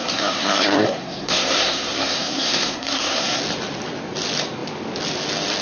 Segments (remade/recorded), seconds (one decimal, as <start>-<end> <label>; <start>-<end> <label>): 0.0-3.4 remade; 3.4-5.6 recorded